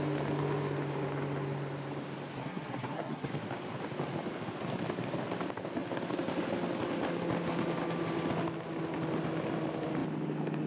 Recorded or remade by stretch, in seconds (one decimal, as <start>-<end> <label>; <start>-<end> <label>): 0.0-2.4 recorded; 2.4-3.3 remade; 3.3-10.7 recorded